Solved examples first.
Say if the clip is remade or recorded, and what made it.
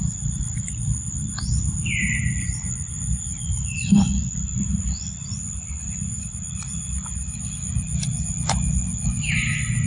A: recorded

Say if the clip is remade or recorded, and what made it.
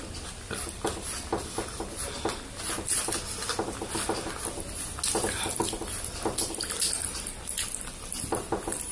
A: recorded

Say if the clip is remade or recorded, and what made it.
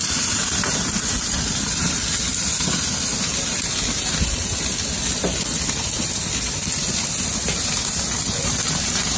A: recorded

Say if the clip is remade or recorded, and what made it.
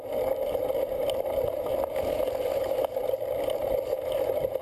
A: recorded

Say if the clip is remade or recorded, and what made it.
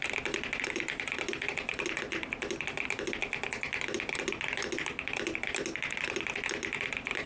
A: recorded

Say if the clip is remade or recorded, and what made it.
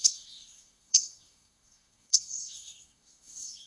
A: remade, codec, SNAC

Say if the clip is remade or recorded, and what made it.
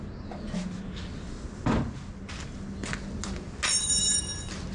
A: recorded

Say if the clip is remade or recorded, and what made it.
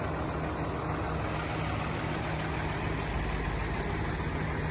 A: recorded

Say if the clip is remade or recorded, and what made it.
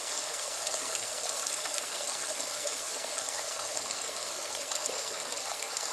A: remade, codec, SNAC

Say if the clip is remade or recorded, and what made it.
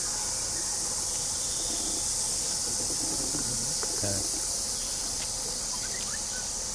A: recorded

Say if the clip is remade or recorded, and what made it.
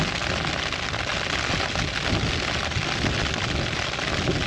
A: recorded